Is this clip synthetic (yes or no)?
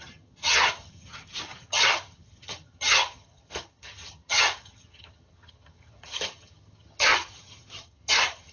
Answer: yes